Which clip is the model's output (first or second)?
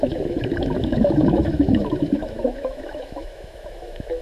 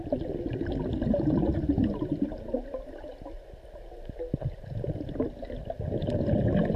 first